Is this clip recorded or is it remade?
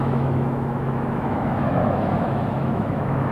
remade